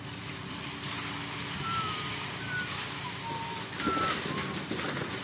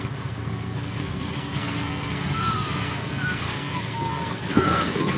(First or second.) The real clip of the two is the first